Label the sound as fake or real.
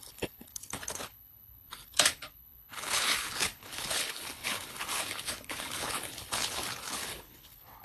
fake